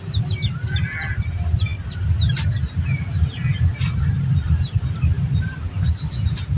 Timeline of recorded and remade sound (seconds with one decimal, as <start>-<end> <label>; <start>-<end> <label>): 0.0-6.6 recorded